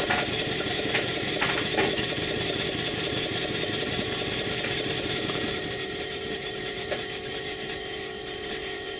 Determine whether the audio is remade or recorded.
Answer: remade